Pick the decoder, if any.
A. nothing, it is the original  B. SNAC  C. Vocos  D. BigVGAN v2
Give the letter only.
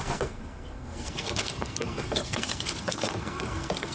B